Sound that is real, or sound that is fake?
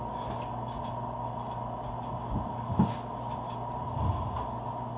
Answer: real